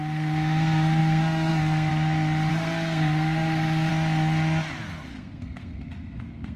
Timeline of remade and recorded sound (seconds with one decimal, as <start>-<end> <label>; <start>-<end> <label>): 0.0-1.9 remade; 1.9-2.5 recorded; 2.5-3.9 remade; 3.9-5.1 recorded; 5.1-6.6 remade